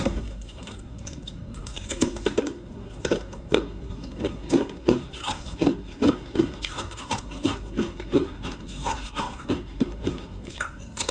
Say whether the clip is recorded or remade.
remade